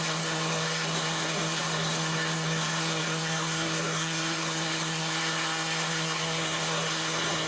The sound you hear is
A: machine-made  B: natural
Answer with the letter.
A